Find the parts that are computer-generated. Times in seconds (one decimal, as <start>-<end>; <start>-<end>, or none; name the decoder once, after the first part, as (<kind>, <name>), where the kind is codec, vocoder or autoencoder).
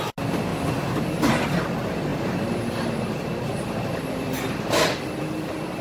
0.5-1.6 (vocoder, BigVGAN v2); 2.1-5.8